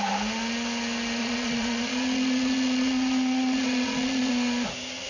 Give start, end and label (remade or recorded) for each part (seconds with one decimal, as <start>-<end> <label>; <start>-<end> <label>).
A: 0.0-1.2 recorded; 1.2-4.3 remade; 4.3-5.1 recorded